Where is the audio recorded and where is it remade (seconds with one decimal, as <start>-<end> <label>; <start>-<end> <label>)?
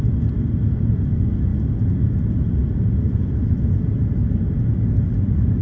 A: 0.0-5.6 recorded